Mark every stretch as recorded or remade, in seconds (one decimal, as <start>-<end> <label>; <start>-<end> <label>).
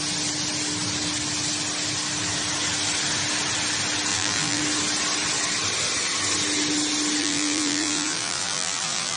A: 0.0-4.1 recorded; 4.1-4.6 remade; 4.6-7.2 recorded; 7.2-9.2 remade